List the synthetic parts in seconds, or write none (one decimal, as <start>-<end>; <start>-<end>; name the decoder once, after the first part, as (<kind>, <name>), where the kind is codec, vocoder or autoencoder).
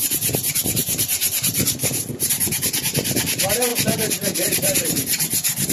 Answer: 0.0-3.7 (vocoder, BigVGAN v2); 4.4-5.7